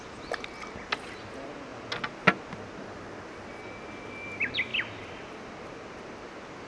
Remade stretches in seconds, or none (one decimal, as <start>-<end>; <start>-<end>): none